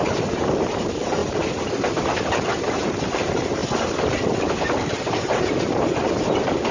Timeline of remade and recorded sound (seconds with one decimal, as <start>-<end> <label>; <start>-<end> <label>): 0.0-1.2 remade; 1.2-2.6 recorded; 2.6-3.6 remade; 3.6-4.5 recorded; 4.5-6.7 remade